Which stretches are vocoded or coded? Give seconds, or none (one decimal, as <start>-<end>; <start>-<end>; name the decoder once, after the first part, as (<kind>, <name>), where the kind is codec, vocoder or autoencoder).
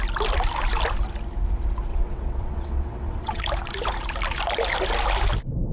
1.9-3.4 (vocoder, WaveNeXt)